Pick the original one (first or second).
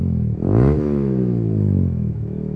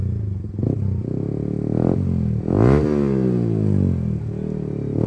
second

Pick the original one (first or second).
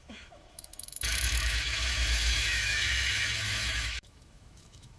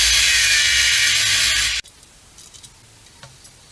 second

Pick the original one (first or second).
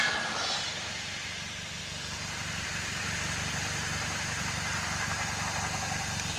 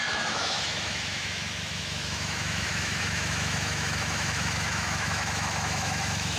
first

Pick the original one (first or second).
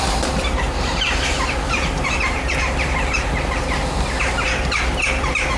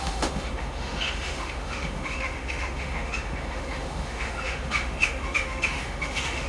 first